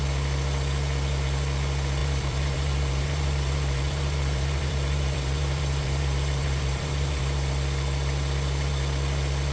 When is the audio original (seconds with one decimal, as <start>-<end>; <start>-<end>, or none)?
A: 0.0-2.0; 7.2-9.5

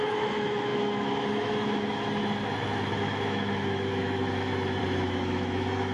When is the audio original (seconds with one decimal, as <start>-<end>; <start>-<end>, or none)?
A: none

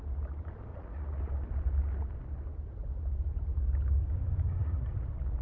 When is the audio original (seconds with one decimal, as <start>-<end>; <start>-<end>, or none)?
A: 0.0-0.7; 1.2-4.6